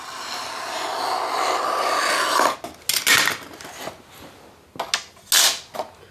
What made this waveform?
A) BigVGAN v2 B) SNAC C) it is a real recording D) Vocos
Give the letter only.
C